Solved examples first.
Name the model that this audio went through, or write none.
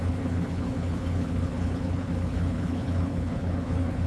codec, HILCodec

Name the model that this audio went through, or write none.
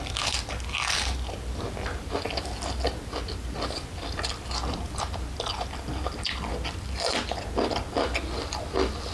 none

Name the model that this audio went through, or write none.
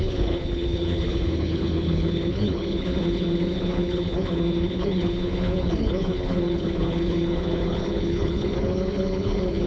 codec, HILCodec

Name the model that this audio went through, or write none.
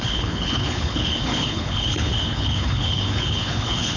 codec, HILCodec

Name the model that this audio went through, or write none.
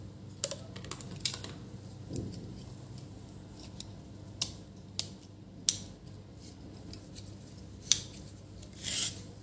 none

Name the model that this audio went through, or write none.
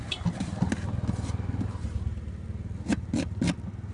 none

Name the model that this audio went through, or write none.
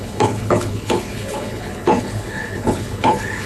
codec, HILCodec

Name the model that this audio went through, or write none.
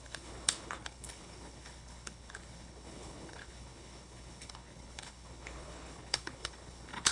codec, HILCodec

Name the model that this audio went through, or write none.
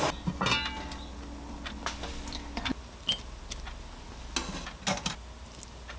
none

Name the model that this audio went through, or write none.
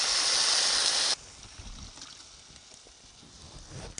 none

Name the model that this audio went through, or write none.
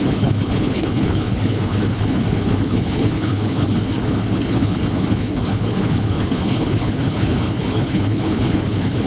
codec, HILCodec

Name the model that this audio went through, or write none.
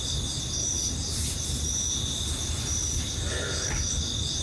none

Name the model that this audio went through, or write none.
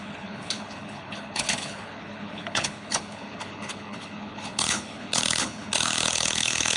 codec, HILCodec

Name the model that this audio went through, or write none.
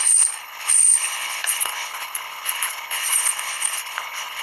codec, HILCodec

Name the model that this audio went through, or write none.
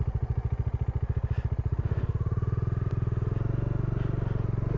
none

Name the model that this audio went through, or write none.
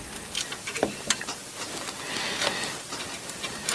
none